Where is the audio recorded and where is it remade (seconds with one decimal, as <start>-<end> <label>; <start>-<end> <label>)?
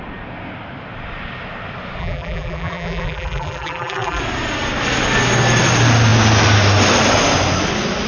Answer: 0.0-2.0 recorded; 2.0-4.2 remade; 4.2-8.1 recorded